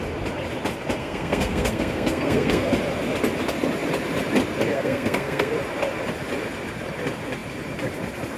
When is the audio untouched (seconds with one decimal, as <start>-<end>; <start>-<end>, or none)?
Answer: 0.0-1.0; 2.7-4.7; 5.5-8.4